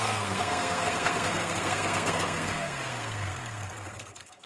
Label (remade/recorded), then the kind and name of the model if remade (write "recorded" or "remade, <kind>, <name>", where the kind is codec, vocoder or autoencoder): remade, codec, SNAC